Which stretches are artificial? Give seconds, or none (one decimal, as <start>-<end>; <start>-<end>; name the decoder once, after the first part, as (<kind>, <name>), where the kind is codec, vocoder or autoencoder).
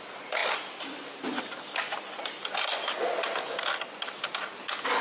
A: none